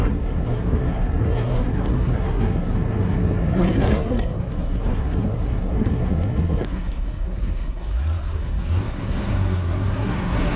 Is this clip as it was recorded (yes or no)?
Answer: no